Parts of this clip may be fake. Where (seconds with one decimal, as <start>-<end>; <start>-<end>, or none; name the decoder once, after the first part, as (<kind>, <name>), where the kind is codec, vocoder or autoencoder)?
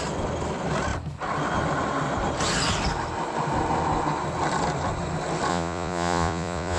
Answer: 5.5-6.8 (vocoder, Vocos)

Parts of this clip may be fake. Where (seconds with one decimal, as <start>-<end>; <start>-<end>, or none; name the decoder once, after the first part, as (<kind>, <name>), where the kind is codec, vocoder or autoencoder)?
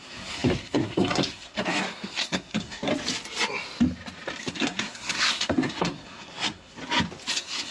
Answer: 0.0-2.9 (codec, SNAC); 4.4-6.8; 7.3-7.7